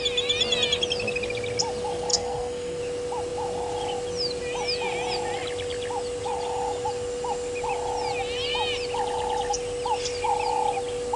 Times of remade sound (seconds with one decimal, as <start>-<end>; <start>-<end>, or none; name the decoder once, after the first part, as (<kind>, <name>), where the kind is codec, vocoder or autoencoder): 2.1-2.8 (codec, SNAC)

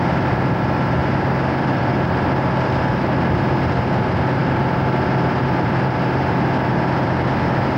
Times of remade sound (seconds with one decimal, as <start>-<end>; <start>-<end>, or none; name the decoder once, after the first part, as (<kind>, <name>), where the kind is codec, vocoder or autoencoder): none

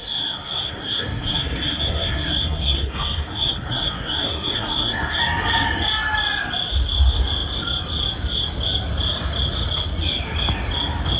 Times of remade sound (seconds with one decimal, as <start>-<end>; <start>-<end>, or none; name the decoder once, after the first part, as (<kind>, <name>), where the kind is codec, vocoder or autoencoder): 0.0-5.2 (codec, SNAC)